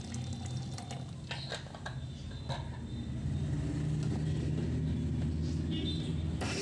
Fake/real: real